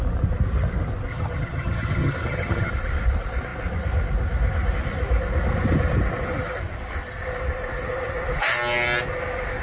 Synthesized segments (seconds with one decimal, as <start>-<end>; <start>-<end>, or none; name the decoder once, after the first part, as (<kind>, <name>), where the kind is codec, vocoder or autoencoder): 1.1-2.7 (vocoder, HiFi-GAN)